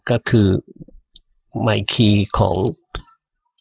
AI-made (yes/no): yes